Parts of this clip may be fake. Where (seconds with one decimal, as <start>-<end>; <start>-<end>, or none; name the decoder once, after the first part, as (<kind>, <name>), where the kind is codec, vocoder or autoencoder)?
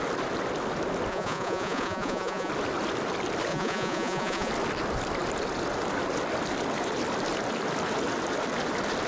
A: 1.1-2.5 (vocoder, Vocos); 3.5-4.5